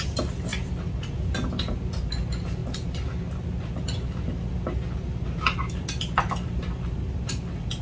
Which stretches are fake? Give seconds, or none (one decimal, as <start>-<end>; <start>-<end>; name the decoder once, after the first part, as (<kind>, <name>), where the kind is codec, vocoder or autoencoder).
none